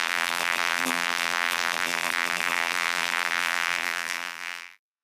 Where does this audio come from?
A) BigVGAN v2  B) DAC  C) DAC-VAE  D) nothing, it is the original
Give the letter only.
A